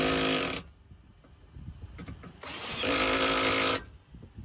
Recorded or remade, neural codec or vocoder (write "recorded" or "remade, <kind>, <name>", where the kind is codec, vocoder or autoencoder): recorded